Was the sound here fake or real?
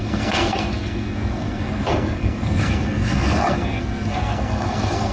fake